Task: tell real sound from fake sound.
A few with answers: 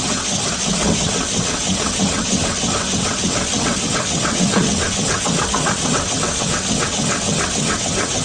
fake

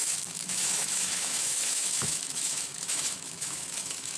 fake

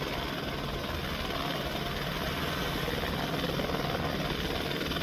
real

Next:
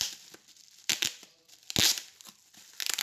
real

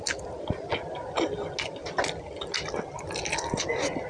real